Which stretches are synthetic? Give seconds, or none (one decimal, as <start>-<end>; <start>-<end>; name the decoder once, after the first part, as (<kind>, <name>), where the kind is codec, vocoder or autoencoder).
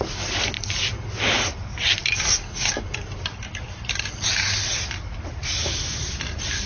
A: none